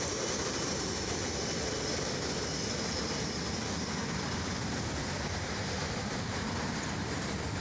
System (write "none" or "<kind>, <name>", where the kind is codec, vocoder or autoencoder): none